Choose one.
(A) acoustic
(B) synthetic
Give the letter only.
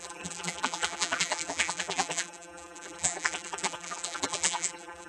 B